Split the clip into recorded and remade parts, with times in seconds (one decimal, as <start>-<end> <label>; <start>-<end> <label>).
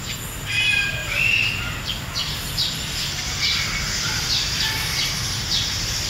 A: 0.0-1.0 recorded; 1.0-3.3 remade; 3.3-6.1 recorded